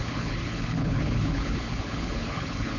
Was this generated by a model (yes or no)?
yes